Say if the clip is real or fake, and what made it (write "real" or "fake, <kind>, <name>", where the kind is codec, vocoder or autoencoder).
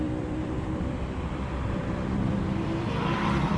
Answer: fake, vocoder, BigVGAN v2